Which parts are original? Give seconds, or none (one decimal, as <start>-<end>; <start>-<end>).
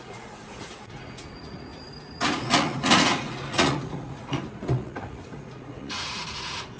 none